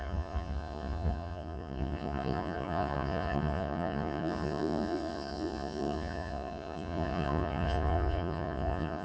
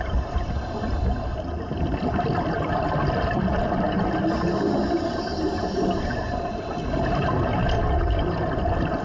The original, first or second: second